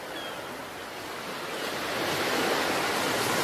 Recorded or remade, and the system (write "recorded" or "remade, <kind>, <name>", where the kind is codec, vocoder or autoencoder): recorded